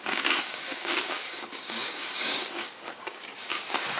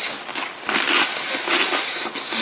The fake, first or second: first